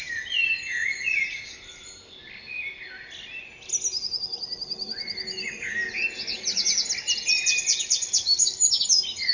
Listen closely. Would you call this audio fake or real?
real